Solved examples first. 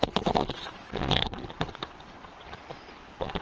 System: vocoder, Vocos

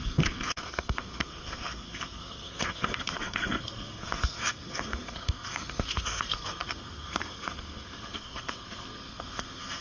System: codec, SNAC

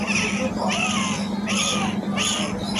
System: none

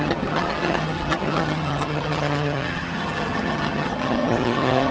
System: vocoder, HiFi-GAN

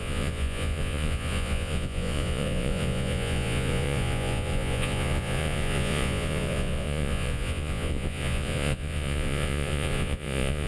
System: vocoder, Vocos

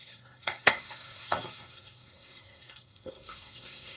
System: codec, SNAC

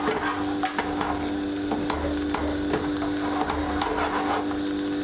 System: none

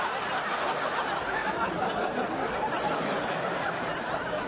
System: none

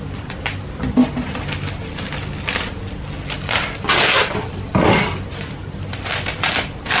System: none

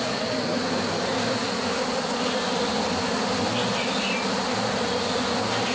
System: none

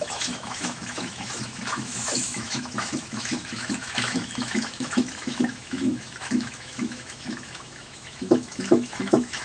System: autoencoder, DAC-VAE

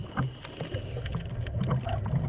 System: none